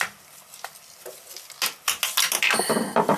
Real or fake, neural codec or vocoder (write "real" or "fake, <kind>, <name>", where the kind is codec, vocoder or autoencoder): real